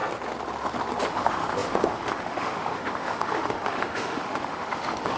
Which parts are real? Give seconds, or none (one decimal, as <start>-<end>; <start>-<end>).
0.0-1.1